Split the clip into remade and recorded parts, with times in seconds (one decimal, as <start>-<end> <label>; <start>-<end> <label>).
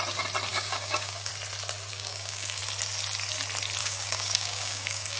0.0-0.5 recorded; 0.5-1.3 remade; 1.3-1.9 recorded; 1.9-2.6 remade; 2.6-3.8 recorded; 3.8-5.2 remade